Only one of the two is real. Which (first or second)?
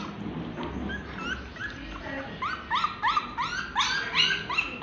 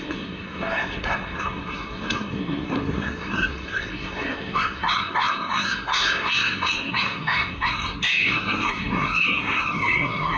first